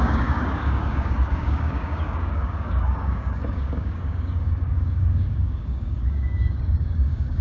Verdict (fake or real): fake